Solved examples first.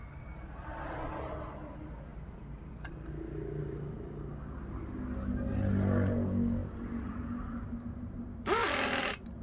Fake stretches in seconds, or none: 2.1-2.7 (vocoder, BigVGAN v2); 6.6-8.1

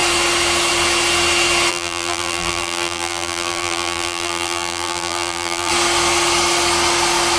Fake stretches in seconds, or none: 1.7-5.7 (vocoder, BigVGAN v2)